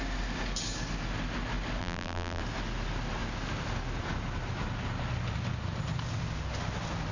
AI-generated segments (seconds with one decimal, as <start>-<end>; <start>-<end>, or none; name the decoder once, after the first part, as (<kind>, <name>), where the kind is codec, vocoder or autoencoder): 1.8-2.4 (vocoder, BigVGAN v2)